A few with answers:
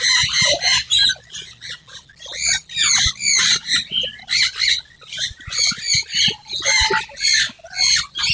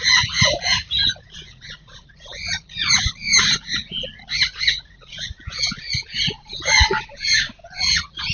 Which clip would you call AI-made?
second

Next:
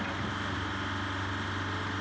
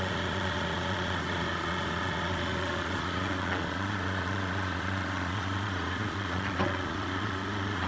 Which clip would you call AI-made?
second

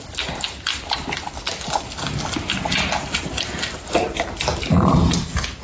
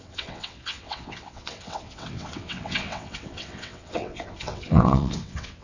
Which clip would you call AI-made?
second